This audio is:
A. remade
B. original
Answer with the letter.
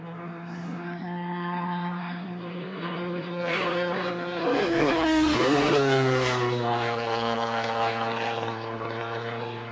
A